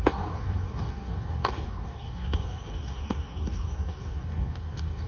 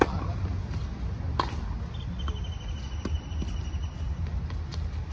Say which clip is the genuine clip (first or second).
second